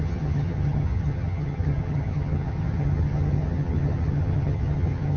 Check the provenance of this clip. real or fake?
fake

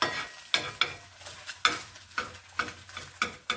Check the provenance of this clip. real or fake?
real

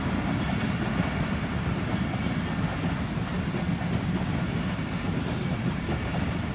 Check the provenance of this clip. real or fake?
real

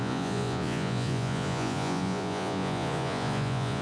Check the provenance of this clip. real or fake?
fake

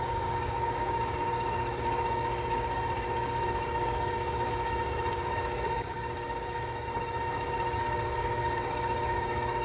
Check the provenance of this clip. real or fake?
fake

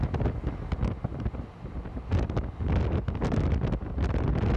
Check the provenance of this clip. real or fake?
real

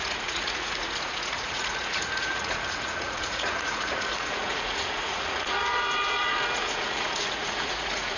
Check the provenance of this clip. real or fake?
fake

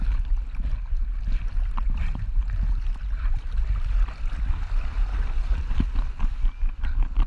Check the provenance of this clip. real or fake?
real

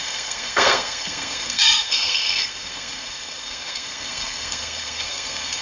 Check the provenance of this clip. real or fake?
fake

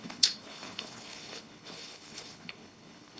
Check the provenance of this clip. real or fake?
fake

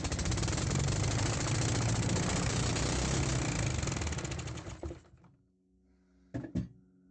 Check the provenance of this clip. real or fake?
real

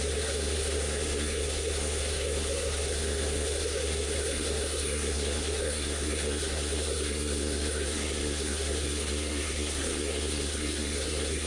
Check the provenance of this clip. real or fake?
fake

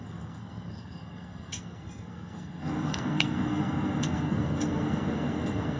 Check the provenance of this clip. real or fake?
fake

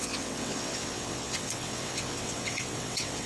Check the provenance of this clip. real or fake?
fake